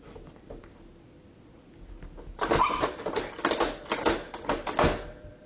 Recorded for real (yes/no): yes